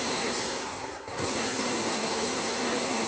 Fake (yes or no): yes